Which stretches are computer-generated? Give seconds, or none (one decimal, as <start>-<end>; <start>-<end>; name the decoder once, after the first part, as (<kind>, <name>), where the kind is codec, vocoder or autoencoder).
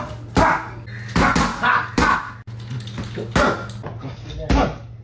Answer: none